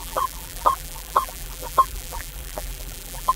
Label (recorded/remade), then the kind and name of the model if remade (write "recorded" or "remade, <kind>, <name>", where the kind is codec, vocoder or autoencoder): remade, vocoder, BigVGAN v2